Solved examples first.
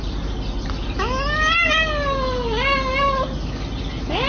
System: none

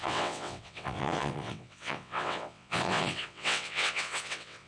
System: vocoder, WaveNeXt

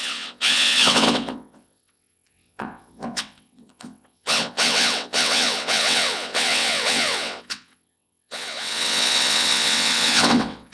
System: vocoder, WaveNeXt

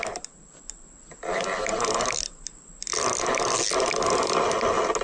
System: none